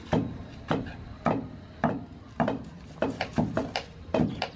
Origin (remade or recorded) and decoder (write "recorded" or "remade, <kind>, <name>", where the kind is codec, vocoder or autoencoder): recorded